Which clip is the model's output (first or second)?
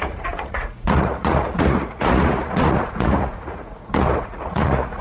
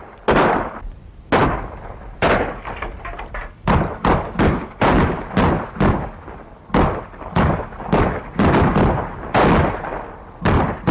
first